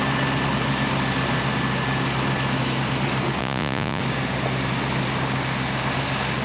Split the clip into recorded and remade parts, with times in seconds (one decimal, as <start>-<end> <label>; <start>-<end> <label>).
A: 0.0-3.4 recorded; 3.4-4.0 remade; 4.0-6.4 recorded

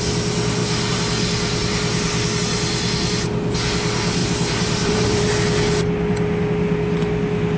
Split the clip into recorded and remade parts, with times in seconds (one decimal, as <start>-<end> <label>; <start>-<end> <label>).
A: 0.0-4.2 recorded; 4.2-5.3 remade; 5.3-7.6 recorded